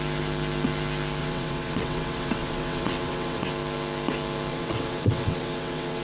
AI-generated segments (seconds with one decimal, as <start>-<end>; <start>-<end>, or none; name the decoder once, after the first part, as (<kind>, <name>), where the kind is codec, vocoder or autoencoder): 1.2-3.5 (vocoder, WaveNeXt); 4.5-6.0

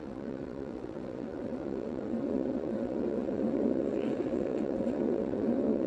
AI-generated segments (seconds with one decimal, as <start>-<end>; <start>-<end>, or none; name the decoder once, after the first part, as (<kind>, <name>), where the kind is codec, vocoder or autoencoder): 0.0-5.9 (vocoder, WaveNeXt)

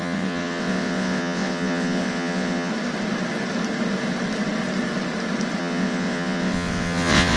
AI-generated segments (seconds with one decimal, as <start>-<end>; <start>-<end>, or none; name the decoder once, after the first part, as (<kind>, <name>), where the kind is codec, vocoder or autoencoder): 0.0-2.7 (vocoder, WaveNeXt); 5.6-7.4

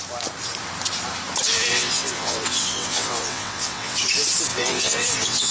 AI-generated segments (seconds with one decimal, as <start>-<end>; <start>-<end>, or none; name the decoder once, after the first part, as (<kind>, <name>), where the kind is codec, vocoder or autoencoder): 1.7-4.0 (vocoder, WaveNeXt); 4.5-5.5